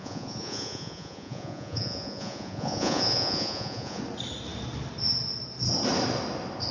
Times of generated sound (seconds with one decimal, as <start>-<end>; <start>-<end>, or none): 0.0-4.0